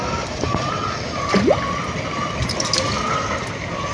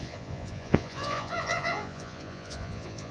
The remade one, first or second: second